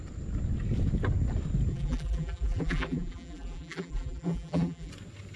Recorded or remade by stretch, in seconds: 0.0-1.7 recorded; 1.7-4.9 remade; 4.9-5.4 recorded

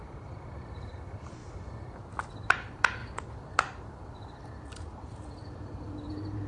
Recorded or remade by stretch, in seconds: 0.0-1.4 remade; 1.4-2.3 recorded; 2.3-3.0 remade; 3.0-4.0 recorded; 4.0-6.5 remade

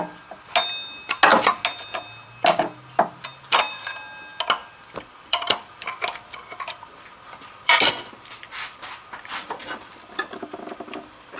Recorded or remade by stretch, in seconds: 0.0-3.3 recorded; 3.3-3.9 remade; 3.9-4.6 recorded; 4.6-7.9 remade; 7.9-11.4 recorded